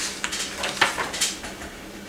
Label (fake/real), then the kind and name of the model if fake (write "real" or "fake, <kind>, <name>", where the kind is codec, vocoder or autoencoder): real